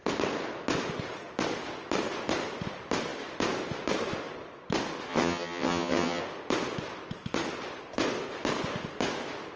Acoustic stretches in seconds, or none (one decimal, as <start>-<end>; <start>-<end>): 0.0-5.1; 6.2-9.6

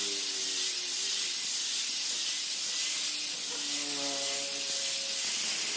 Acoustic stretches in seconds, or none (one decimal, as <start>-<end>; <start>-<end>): 0.0-5.8

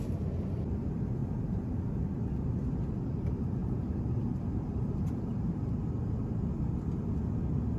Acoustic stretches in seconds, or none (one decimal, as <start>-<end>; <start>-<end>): 0.0-1.2; 1.8-3.6; 5.6-7.8

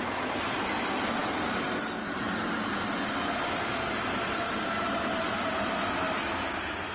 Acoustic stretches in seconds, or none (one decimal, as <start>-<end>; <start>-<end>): 0.0-6.9

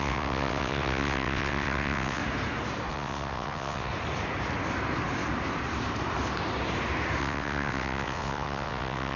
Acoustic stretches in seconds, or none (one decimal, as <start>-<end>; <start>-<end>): 2.2-2.9; 3.9-7.2

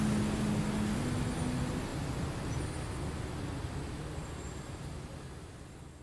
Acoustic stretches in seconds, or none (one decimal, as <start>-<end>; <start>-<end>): 0.0-6.0

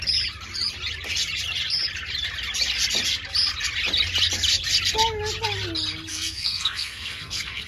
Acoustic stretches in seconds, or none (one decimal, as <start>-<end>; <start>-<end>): 0.0-6.1